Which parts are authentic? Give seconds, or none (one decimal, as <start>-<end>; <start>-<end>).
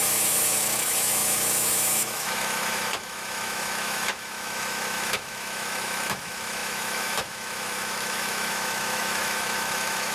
none